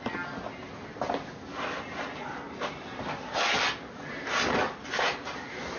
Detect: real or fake real